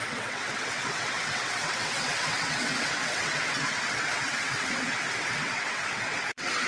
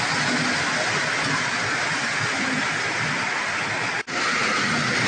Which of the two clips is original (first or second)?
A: second